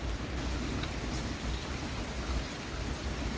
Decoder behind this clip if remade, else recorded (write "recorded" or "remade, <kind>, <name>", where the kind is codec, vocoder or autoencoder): recorded